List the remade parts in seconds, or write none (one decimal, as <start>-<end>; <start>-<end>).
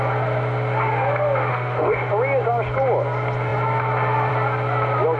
1.5-2.1